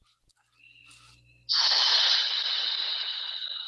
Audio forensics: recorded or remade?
recorded